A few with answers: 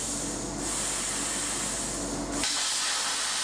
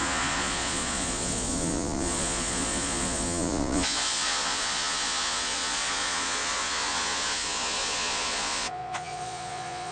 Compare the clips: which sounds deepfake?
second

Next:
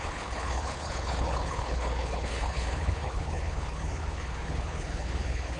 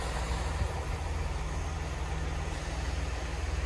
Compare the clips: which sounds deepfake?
first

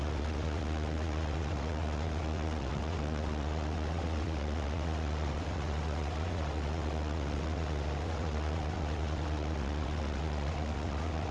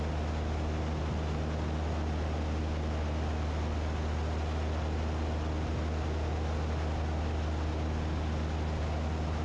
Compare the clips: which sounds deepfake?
first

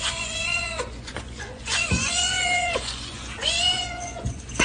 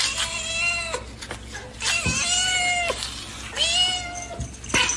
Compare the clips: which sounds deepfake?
first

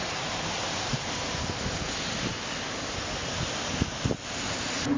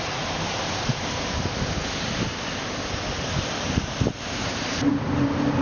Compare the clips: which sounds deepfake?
second